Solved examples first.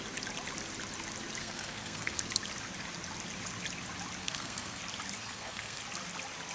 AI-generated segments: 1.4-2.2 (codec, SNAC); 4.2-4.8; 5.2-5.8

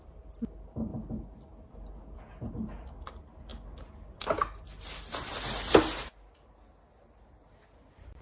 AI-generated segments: none